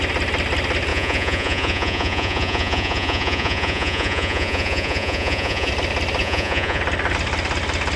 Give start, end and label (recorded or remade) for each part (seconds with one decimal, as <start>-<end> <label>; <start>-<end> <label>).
0.0-0.9 recorded; 0.9-5.7 remade; 5.7-6.2 recorded; 6.2-6.8 remade; 6.8-8.0 recorded